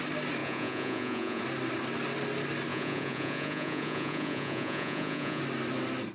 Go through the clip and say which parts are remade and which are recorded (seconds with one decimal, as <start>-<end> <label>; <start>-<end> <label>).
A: 0.0-0.4 recorded; 0.4-1.4 remade; 1.4-2.7 recorded; 2.7-5.4 remade; 5.4-6.1 recorded